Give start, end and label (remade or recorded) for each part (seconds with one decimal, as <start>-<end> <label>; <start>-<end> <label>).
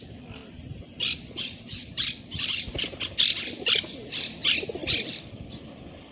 0.0-6.1 recorded